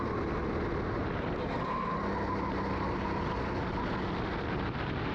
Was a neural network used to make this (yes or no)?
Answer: no